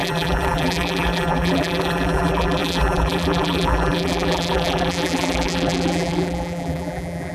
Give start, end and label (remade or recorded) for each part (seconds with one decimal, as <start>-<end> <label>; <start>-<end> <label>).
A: 0.0-7.3 remade